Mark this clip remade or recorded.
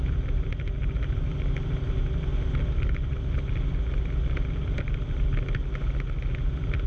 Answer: recorded